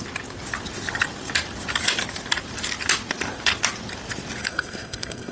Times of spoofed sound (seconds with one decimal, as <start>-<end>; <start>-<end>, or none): 4.4-5.3